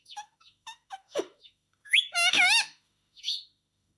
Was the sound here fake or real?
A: fake